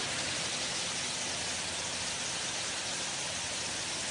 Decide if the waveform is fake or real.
real